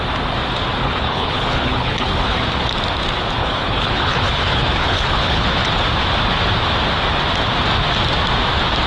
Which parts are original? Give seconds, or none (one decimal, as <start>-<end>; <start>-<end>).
0.0-0.8; 2.4-3.4; 5.6-8.9